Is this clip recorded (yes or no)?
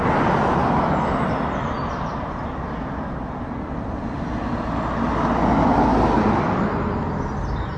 yes